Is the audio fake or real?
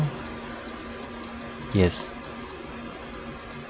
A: real